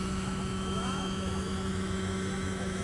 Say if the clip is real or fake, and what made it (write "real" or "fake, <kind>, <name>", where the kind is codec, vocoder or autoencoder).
fake, autoencoder, DAC-VAE